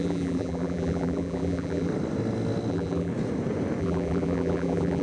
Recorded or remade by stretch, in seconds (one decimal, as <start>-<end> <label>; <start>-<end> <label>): 0.0-1.9 remade; 1.9-2.7 recorded; 2.7-3.1 remade; 3.1-3.8 recorded; 3.8-5.0 remade

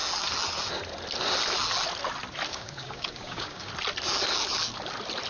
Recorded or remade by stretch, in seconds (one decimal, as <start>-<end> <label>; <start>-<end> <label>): 0.0-2.5 recorded; 2.5-3.7 remade; 3.7-5.3 recorded

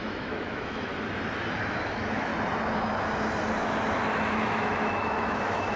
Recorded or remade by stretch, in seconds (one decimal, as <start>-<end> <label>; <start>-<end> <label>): 0.0-0.9 remade; 0.9-1.6 recorded; 1.6-2.3 remade; 2.3-3.6 recorded; 3.6-5.8 remade

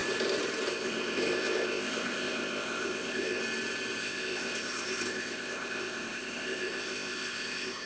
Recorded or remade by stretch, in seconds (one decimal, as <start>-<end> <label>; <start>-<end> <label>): 0.0-0.7 recorded; 0.7-3.4 remade; 3.4-4.0 recorded; 4.0-7.9 remade